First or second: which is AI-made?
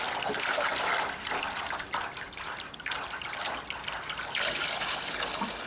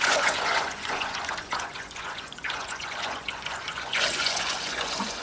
second